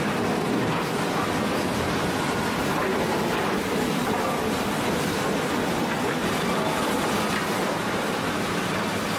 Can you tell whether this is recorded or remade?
recorded